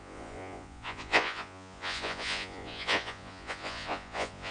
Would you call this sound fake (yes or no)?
yes